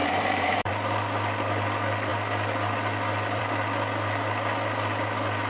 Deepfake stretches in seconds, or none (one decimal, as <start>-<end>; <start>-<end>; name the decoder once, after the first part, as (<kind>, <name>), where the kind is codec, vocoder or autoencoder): 0.0-0.7 (vocoder, BigVGAN v2)